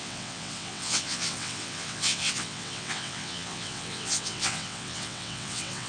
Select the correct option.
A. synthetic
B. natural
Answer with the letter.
A